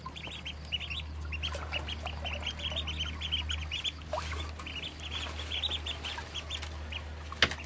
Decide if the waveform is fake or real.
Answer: real